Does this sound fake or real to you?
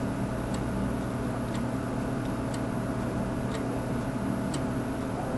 real